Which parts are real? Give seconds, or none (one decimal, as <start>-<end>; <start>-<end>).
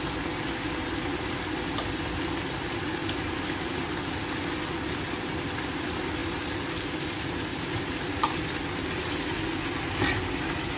0.0-3.0; 3.9-7.5; 8.2-10.8